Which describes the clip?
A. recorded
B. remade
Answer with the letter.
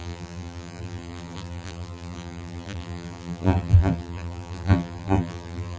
B